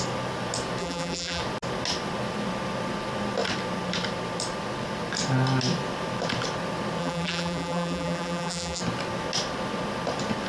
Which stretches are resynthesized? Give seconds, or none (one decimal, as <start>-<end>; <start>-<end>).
0.8-1.4; 7.0-8.8